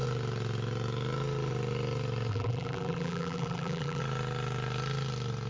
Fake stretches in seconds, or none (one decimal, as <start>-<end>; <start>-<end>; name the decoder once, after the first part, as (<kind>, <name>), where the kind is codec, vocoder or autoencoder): 2.3-4.0 (vocoder, BigVGAN v2)